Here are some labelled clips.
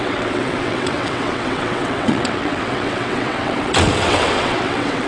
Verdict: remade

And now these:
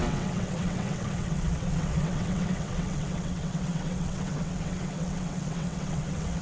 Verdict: remade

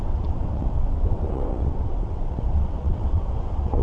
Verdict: remade